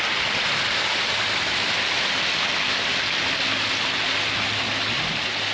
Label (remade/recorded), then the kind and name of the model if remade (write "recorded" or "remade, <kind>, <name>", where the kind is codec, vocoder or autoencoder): recorded